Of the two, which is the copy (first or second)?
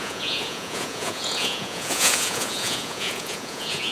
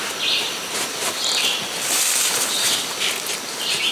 first